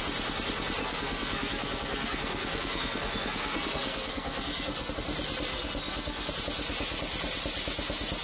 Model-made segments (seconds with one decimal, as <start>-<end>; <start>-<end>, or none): 0.8-4.9; 5.5-6.3